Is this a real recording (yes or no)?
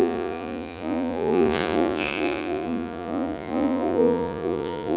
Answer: no